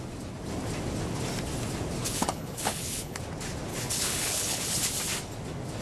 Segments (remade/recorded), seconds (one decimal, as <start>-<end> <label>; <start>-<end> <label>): 0.0-2.1 recorded; 2.1-3.2 remade; 3.2-3.7 recorded; 3.7-4.8 remade; 4.8-5.8 recorded